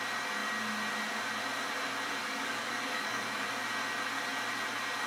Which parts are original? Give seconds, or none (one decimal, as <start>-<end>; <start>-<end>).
0.0-2.2; 3.4-5.1